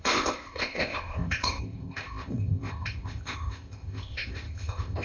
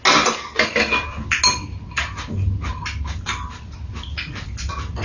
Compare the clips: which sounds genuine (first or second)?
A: second